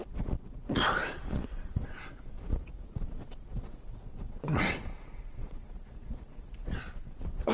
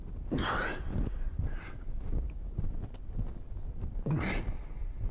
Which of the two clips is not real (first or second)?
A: first